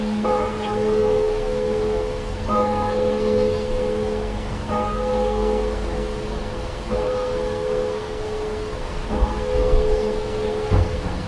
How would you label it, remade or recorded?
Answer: remade